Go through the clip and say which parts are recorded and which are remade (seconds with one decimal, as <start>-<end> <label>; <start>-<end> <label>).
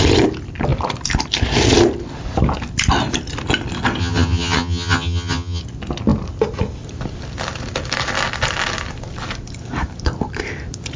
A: 0.0-4.0 recorded; 4.0-5.6 remade; 5.6-11.0 recorded